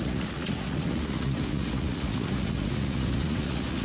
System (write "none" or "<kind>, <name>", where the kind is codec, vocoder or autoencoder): vocoder, Vocos